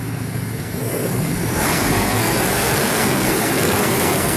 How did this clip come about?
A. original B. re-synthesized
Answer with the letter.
B